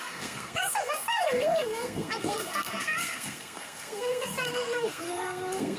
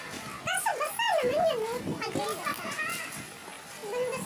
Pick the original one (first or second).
second